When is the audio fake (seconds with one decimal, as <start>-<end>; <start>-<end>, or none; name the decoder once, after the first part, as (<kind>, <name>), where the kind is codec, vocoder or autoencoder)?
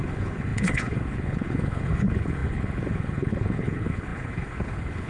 0.0-5.1 (codec, HILCodec)